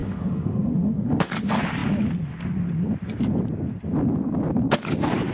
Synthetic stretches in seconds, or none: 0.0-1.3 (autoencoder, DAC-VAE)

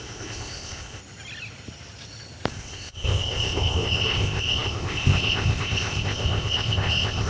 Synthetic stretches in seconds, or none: 0.0-1.0 (codec, ZipCodec); 2.5-7.3